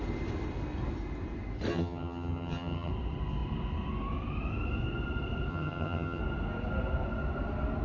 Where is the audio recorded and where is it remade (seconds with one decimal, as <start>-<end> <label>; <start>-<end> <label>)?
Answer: 0.0-1.7 recorded; 1.7-2.9 remade; 2.9-5.5 recorded; 5.5-6.2 remade; 6.2-7.8 recorded